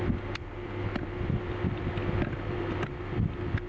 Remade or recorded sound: recorded